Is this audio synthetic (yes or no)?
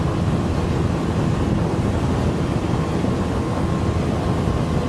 no